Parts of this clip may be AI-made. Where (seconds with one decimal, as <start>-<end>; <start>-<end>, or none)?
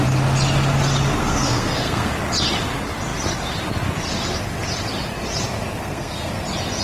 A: 1.2-2.1; 5.7-6.3